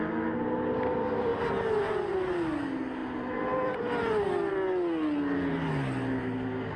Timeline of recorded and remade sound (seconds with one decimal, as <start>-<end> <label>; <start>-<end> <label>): 0.0-6.8 recorded